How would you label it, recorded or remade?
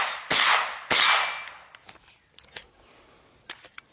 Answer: recorded